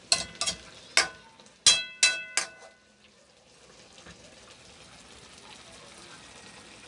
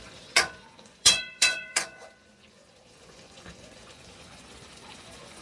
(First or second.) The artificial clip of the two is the second